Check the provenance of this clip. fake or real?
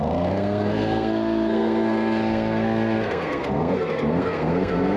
fake